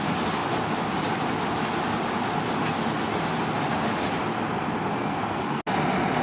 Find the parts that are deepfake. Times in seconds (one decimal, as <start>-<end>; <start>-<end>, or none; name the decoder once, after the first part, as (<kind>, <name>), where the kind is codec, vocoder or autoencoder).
4.9-5.6 (codec, SNAC)